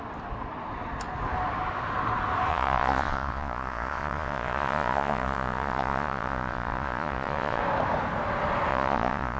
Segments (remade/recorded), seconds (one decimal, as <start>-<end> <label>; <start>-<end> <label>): 0.0-2.5 recorded; 2.5-7.6 remade; 7.6-8.7 recorded; 8.7-9.4 remade